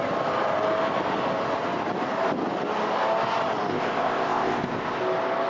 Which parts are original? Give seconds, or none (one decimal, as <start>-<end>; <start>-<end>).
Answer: 0.0-3.7; 5.0-5.5